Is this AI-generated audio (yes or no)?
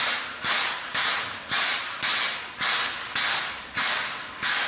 no